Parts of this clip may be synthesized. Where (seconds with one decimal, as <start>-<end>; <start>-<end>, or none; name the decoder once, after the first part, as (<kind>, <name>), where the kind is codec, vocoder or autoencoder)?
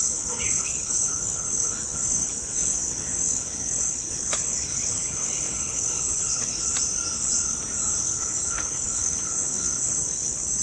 0.0-6.7 (codec, HILCodec); 8.0-10.6